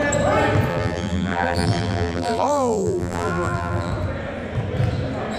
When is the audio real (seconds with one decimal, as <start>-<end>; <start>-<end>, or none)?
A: 0.0-0.7; 3.9-5.4